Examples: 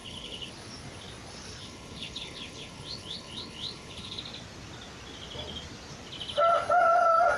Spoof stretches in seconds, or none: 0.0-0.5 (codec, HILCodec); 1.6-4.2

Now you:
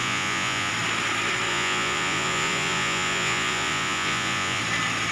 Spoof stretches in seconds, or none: 0.0-0.7 (vocoder, Vocos); 1.5-4.6

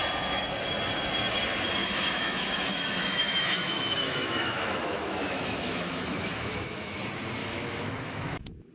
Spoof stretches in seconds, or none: 1.8-7.0 (autoencoder, DAC-VAE); 7.4-8.7

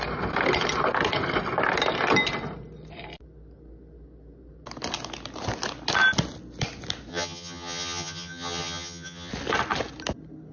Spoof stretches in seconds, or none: 7.1-9.3 (vocoder, HiFi-GAN)

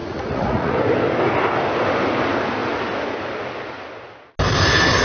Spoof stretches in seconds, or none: 0.0-0.8 (vocoder, Vocos)

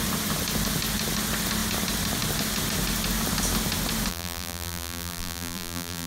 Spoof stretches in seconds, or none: 4.1-6.1 (vocoder, BigVGAN v2)

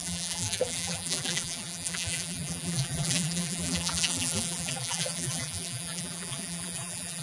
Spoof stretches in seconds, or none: 0.0-7.2 (vocoder, BigVGAN v2)